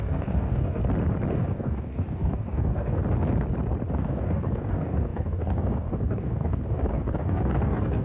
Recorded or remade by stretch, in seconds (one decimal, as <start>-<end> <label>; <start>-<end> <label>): 0.0-0.8 remade; 0.8-1.3 recorded; 1.3-3.0 remade; 3.0-4.0 recorded; 4.0-8.0 remade